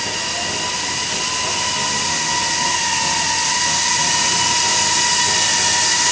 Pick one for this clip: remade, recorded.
recorded